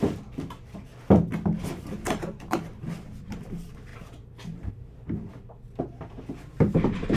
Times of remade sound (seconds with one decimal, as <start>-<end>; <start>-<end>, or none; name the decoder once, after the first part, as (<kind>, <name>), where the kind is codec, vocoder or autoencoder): 0.0-0.9 (vocoder, BigVGAN v2); 1.6-7.2